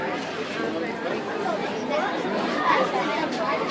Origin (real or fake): real